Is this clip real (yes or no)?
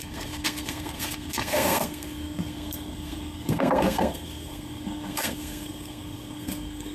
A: no